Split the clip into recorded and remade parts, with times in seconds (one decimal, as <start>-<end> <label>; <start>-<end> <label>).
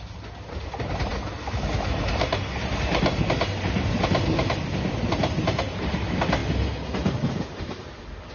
0.0-8.3 recorded